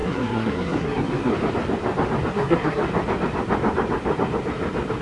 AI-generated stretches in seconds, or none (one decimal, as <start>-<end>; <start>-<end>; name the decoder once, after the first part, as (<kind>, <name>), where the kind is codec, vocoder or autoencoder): 0.0-1.3 (codec, SNAC); 2.3-2.8